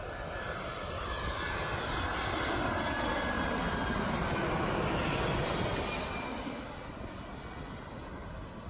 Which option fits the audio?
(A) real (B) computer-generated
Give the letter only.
A